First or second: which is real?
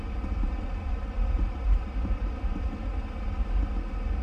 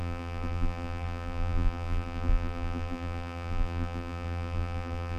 first